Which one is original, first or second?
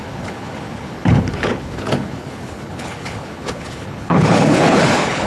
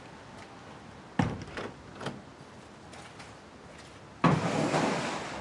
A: second